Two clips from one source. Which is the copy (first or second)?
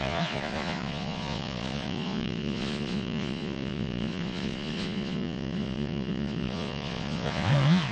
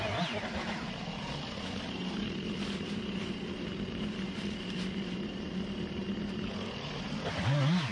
first